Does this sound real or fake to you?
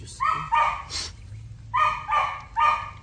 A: real